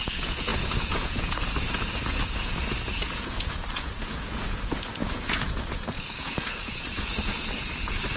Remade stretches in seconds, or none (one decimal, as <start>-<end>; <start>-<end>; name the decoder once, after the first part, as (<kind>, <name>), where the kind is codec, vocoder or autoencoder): 0.0-8.2 (vocoder, Vocos)